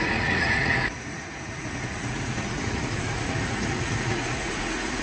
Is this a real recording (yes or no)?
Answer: no